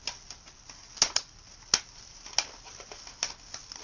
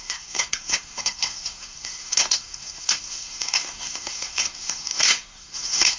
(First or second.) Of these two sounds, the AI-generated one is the second